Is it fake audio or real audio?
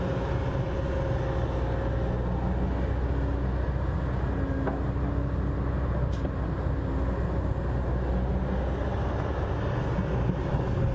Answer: real